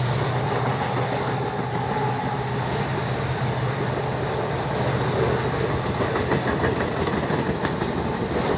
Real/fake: real